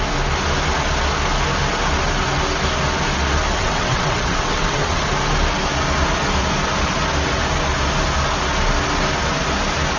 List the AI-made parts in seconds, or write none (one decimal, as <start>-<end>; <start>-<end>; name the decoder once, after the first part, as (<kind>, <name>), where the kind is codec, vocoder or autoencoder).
3.6-5.0 (vocoder, WaveNeXt)